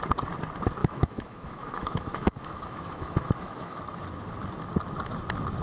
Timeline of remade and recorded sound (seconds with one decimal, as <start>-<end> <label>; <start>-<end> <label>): 0.0-0.8 recorded; 0.8-3.8 remade; 3.8-5.6 recorded